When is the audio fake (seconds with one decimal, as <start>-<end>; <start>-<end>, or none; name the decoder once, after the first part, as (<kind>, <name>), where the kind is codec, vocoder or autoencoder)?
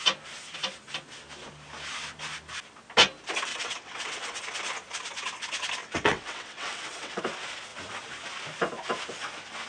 3.5-4.4 (vocoder, WaveNeXt); 5.8-7.2